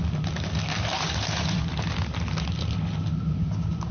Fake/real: real